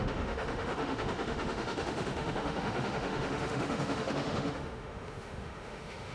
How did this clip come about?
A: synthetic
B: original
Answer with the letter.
A